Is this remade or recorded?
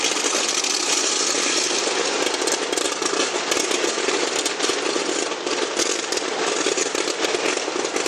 recorded